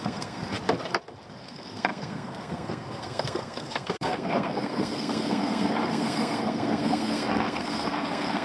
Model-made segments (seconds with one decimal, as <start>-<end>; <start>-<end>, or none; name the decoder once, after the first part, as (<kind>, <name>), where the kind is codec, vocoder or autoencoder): 0.0-0.4 (codec, SNAC); 1.4-8.4